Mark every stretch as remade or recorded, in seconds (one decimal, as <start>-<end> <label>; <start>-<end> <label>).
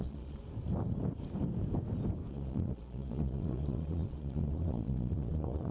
0.0-0.4 remade; 0.4-2.3 recorded; 2.3-5.7 remade